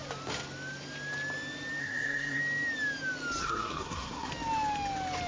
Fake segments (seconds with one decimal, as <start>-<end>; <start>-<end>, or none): 1.8-2.4; 3.4-4.3